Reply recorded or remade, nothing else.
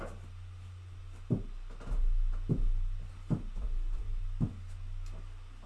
recorded